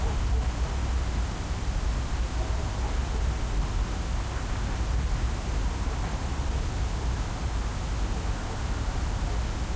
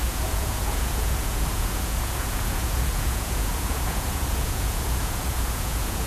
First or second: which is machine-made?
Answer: second